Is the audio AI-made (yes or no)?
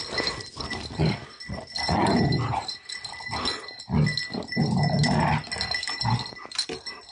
no